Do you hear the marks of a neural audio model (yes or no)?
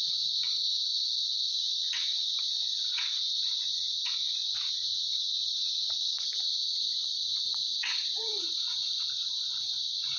yes